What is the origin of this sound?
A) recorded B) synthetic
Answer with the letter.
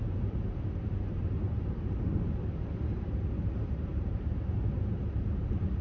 B